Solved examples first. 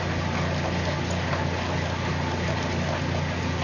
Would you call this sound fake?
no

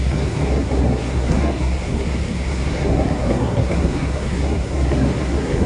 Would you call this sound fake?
yes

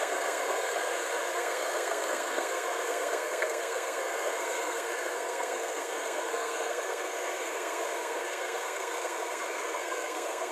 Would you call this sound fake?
yes